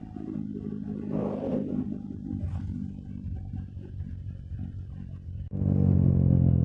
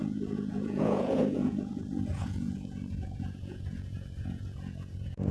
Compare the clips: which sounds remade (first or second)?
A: second